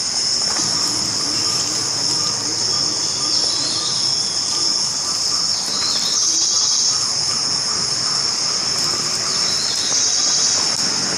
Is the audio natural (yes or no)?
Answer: yes